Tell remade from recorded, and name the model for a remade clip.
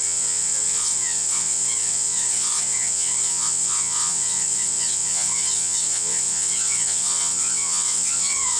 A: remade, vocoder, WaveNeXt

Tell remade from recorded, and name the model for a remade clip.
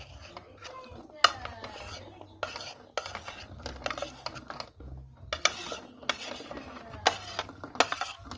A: recorded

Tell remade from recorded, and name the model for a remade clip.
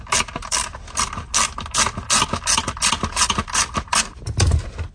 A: recorded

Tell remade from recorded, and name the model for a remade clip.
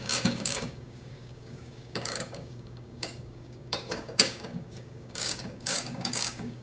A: remade, codec, DAC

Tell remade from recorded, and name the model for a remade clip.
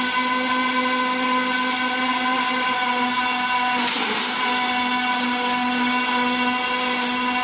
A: recorded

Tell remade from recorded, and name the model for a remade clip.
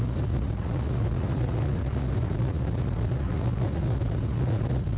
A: remade, vocoder, Vocos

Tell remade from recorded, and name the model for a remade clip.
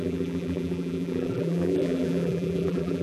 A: remade, vocoder, BigVGAN v2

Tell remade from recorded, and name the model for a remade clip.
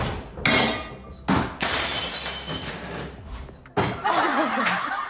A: recorded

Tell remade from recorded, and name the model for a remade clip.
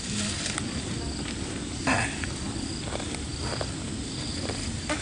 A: recorded